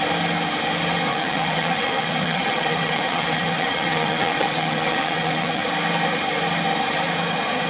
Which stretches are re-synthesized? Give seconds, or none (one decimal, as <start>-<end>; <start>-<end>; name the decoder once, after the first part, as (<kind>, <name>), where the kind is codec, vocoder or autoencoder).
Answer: 1.1-5.7 (vocoder, WaveNeXt)